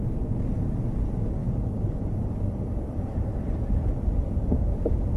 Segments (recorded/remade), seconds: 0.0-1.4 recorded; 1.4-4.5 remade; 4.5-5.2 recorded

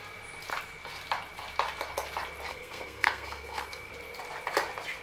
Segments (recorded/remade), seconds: 0.0-2.5 recorded; 2.5-3.9 remade; 3.9-5.0 recorded

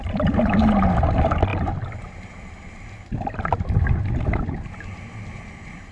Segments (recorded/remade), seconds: 0.0-5.9 recorded

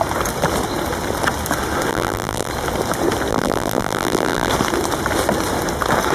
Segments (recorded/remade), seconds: 0.0-1.9 recorded; 1.9-2.5 remade; 2.5-3.3 recorded; 3.3-4.5 remade; 4.5-6.1 recorded

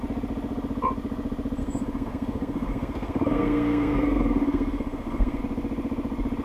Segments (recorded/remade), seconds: 0.0-1.6 recorded; 1.6-5.4 remade; 5.4-6.4 recorded

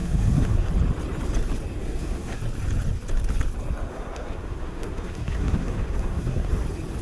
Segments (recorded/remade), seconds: 0.0-0.7 remade; 0.7-1.8 recorded; 1.8-2.4 remade; 2.4-3.9 recorded; 3.9-6.5 remade; 6.5-7.0 recorded

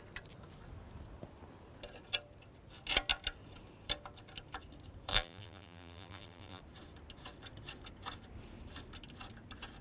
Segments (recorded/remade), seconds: 0.0-5.1 recorded; 5.1-6.6 remade; 6.6-9.8 recorded